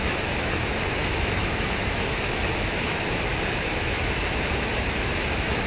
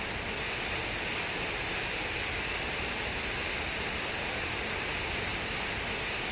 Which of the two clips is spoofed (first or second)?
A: first